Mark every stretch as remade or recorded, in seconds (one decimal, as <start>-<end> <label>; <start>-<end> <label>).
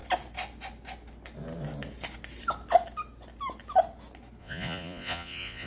0.0-4.4 recorded; 4.4-5.7 remade